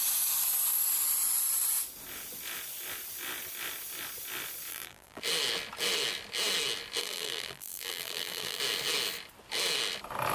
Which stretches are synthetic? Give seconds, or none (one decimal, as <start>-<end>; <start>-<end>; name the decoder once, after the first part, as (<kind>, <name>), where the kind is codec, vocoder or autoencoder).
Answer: 4.7-5.2 (vocoder, BigVGAN v2); 7.0-8.6

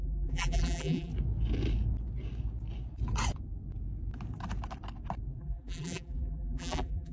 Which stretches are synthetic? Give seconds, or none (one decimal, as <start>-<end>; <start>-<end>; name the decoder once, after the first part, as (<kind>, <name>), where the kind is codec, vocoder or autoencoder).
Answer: 0.0-1.1 (vocoder, BigVGAN v2); 5.4-7.1

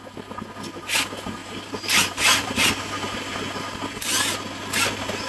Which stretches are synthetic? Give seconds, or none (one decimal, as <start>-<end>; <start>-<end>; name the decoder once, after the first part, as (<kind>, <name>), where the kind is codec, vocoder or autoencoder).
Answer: 1.4-2.7 (vocoder, BigVGAN v2)

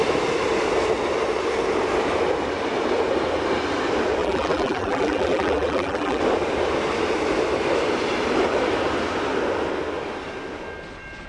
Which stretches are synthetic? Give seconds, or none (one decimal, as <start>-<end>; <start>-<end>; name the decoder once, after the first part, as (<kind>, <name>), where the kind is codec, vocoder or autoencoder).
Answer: 4.2-6.2 (vocoder, BigVGAN v2)

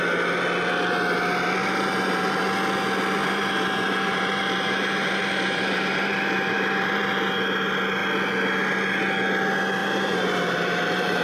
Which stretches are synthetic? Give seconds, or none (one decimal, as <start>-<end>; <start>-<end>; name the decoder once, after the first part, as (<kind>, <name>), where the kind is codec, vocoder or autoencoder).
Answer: 1.6-2.4 (vocoder, BigVGAN v2); 3.2-7.3; 9.8-11.2